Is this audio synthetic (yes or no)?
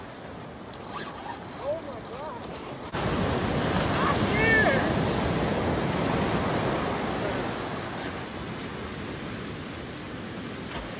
no